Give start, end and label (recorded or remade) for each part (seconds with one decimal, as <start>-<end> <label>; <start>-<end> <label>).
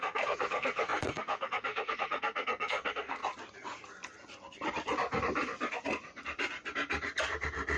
0.0-3.2 remade; 3.2-7.8 recorded